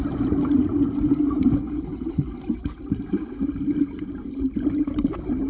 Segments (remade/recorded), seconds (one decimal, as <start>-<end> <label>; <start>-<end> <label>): 0.0-1.9 recorded; 1.9-5.5 remade